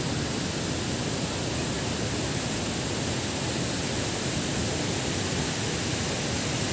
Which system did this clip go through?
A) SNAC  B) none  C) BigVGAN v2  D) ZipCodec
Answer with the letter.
B